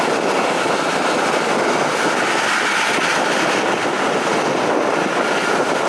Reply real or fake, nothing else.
real